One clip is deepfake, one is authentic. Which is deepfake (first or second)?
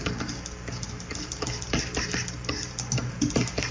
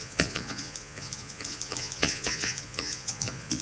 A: second